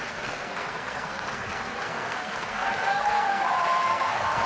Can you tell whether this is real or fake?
fake